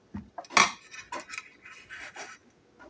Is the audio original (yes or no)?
yes